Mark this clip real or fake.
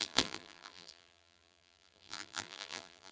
fake